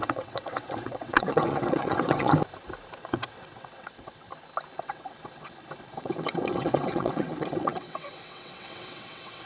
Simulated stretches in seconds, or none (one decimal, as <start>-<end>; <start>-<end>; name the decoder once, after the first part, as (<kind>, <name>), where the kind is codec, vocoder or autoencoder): 0.0-2.3 (vocoder, WaveNeXt); 3.0-4.3; 4.8-9.5